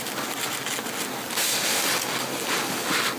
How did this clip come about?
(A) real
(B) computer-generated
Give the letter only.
A